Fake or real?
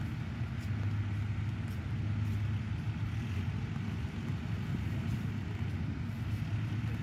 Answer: real